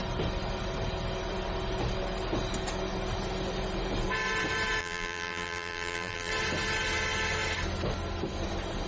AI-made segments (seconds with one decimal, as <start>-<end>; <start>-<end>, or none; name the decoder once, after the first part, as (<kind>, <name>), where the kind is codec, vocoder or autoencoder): 4.8-6.3 (vocoder, BigVGAN v2)